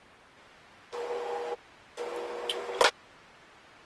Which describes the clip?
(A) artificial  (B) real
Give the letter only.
B